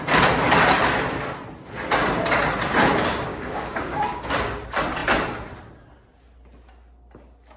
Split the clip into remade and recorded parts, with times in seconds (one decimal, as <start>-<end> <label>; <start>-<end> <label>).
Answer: 0.0-3.3 recorded; 3.3-4.2 remade; 4.2-7.6 recorded